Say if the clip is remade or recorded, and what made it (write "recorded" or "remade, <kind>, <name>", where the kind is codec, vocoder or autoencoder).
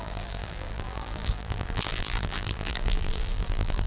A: remade, vocoder, BigVGAN v2